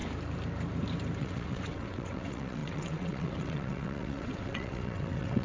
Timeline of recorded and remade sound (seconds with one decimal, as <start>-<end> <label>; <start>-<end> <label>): 0.0-1.2 recorded; 1.2-5.4 remade